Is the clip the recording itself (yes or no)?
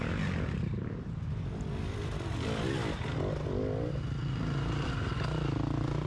yes